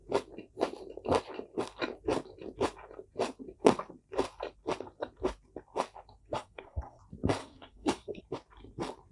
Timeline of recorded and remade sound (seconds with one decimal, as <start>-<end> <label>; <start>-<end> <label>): 0.0-6.2 recorded; 6.2-7.0 remade; 7.0-7.4 recorded; 7.4-8.2 remade; 8.2-9.1 recorded